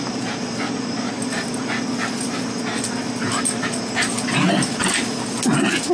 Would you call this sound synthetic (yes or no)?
no